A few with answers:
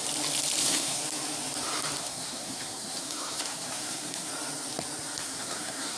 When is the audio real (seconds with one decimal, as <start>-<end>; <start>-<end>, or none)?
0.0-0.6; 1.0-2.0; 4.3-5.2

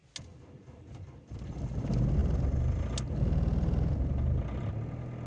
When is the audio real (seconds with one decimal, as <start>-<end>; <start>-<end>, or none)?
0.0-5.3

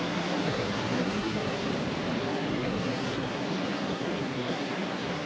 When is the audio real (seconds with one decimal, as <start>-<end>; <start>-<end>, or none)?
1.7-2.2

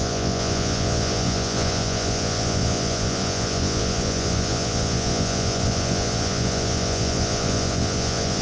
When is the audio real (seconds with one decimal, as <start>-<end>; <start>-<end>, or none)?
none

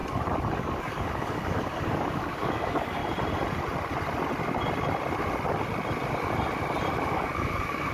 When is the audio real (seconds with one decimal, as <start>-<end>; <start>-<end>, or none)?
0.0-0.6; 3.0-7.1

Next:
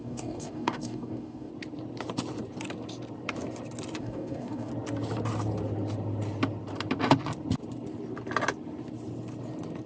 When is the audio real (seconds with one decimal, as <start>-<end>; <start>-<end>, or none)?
1.5-4.0; 4.7-9.9